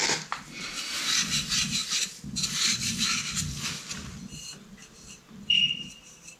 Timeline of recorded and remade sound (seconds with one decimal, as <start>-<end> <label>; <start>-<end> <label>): 0.0-6.4 recorded